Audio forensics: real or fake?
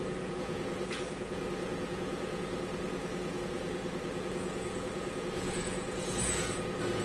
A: fake